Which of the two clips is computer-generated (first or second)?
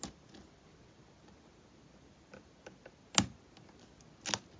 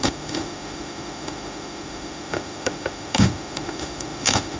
second